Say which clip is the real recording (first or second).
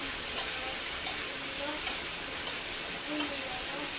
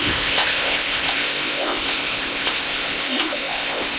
first